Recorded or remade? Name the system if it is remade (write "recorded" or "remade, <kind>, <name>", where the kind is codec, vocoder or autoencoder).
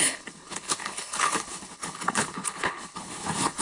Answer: remade, codec, HILCodec